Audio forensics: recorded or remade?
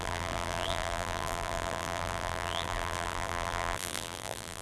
remade